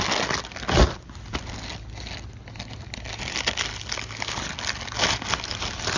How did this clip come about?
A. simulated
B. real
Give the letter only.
B